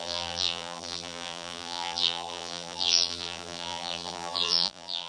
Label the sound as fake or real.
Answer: fake